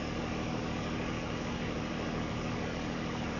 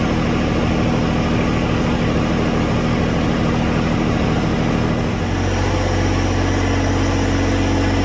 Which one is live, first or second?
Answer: second